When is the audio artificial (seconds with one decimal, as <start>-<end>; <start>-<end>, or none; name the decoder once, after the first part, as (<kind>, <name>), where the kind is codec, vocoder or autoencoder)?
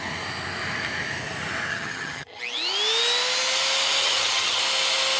1.7-2.4 (vocoder, HiFi-GAN); 4.0-4.6